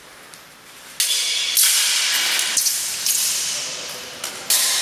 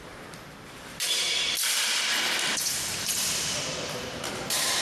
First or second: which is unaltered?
first